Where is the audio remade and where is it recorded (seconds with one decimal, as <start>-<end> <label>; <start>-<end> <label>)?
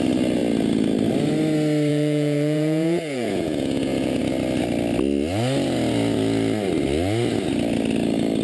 0.0-1.9 recorded; 1.9-4.2 remade; 4.2-8.4 recorded